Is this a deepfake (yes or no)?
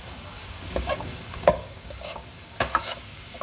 yes